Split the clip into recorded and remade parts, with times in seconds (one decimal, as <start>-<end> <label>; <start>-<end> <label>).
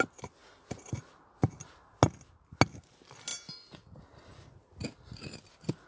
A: 0.0-5.9 recorded